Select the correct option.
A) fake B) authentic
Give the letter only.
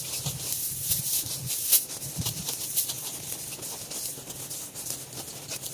B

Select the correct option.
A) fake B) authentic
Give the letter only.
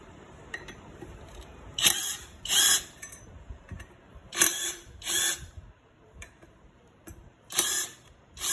A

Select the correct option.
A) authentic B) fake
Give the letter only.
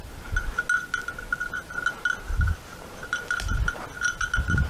A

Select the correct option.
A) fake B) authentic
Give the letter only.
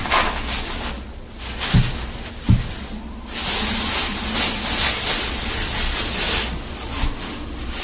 B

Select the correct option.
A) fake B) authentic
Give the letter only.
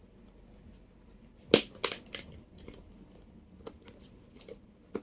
B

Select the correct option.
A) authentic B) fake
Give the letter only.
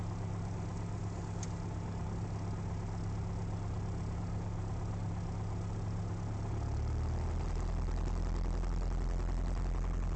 A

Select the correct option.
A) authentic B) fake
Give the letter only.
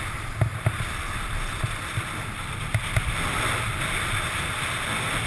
B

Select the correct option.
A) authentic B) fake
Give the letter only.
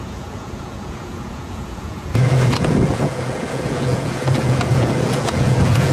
B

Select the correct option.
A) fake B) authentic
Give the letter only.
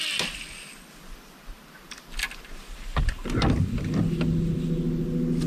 B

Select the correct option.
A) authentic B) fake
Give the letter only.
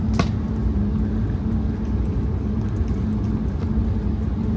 A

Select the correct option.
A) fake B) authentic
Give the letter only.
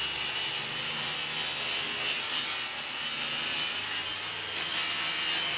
B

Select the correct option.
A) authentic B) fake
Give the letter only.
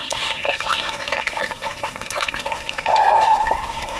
B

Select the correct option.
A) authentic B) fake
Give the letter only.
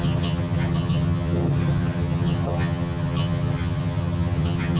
B